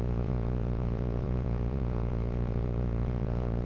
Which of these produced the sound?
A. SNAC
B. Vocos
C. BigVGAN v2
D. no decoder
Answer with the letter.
B